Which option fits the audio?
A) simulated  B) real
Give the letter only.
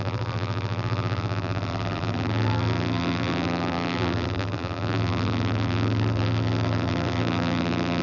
A